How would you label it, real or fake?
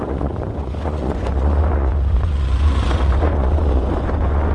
fake